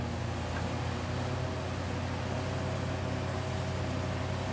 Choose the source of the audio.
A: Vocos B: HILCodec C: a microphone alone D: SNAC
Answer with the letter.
C